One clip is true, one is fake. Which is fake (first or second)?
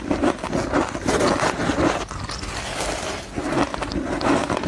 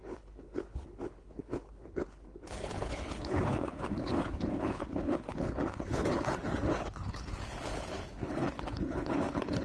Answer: second